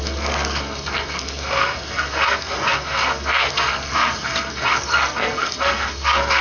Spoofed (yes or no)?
yes